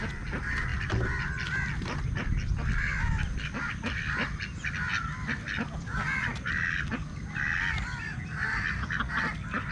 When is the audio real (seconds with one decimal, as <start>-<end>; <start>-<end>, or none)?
0.0-9.7